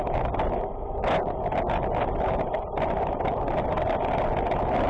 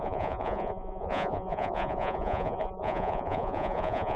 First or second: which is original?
first